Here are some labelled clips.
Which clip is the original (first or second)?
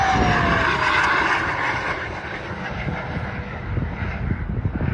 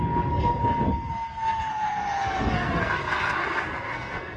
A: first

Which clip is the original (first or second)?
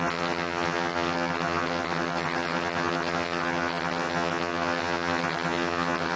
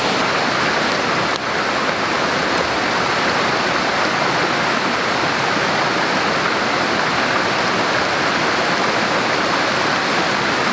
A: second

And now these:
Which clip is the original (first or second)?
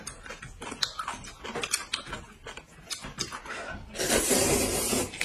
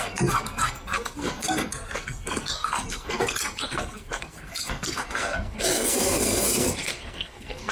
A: first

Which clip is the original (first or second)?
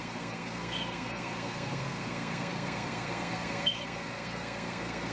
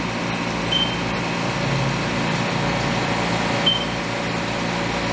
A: second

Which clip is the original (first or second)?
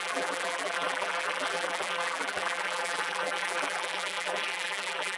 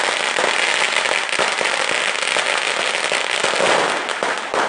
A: second